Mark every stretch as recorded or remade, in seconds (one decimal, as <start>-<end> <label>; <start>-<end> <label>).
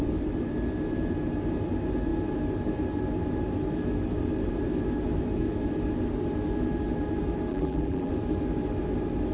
0.0-7.5 recorded; 7.5-8.1 remade; 8.1-9.3 recorded